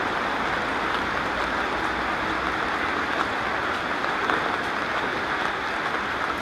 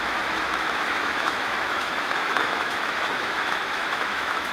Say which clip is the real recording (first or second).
first